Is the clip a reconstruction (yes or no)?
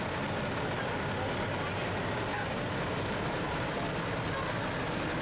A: no